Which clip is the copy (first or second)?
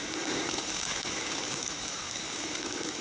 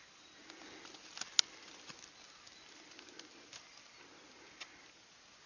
first